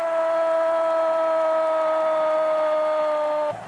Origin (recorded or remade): recorded